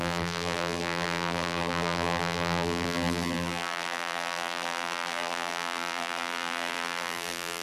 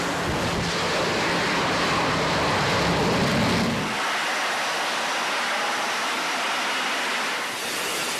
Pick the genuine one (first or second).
second